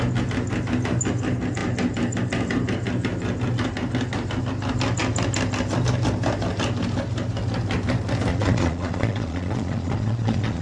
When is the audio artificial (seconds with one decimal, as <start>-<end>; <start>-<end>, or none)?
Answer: 8.3-10.6